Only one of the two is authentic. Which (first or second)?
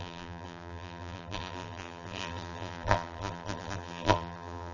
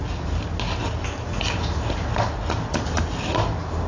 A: second